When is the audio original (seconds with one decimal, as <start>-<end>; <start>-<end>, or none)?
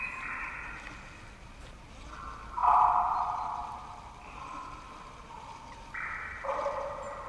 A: 0.0-7.3